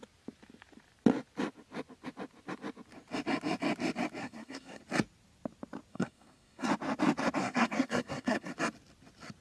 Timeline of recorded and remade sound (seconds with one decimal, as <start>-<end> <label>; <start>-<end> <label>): 0.0-4.2 recorded; 4.2-4.8 remade; 4.8-5.9 recorded; 5.9-6.7 remade; 6.7-7.4 recorded; 7.4-8.5 remade; 8.5-9.4 recorded